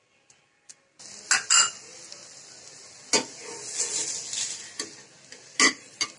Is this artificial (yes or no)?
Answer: no